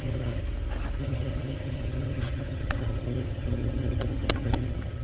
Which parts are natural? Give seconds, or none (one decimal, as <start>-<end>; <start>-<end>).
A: 0.4-1.0